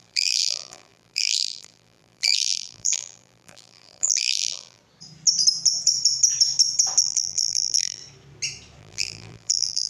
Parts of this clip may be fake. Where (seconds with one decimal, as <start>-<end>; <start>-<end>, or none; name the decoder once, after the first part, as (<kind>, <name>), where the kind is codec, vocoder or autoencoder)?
0.0-4.8 (vocoder, BigVGAN v2); 7.0-8.0; 8.8-9.9